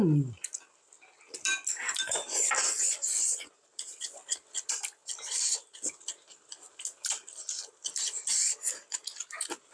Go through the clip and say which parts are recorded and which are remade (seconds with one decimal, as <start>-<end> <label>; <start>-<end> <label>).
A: 0.0-9.7 recorded